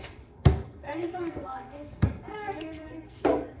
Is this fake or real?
fake